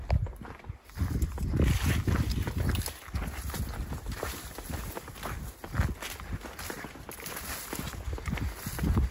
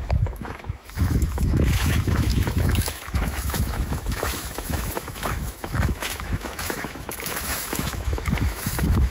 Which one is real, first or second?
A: first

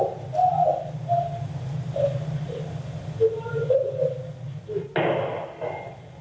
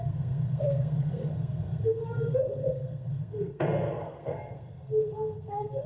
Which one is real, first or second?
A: first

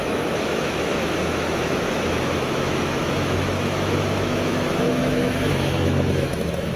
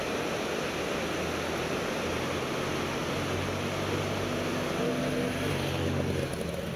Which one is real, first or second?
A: second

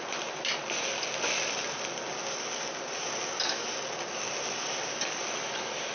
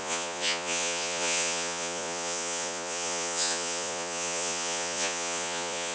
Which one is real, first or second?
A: first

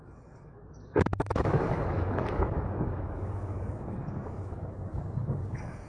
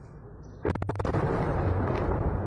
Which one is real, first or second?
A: second